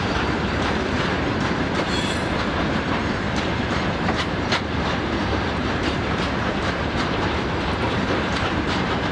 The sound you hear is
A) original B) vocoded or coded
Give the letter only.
B